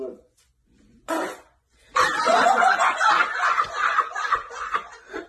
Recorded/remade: remade